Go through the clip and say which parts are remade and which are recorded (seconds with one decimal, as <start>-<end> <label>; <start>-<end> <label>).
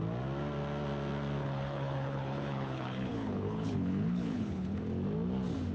0.0-1.4 recorded; 1.4-4.8 remade; 4.8-5.7 recorded